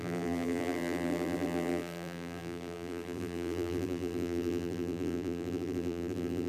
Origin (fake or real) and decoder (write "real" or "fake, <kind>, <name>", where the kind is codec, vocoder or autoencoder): fake, vocoder, BigVGAN v2